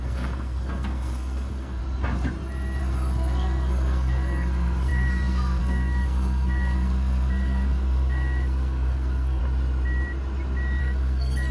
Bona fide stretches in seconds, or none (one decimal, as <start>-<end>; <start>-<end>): 1.8-2.8; 9.4-10.8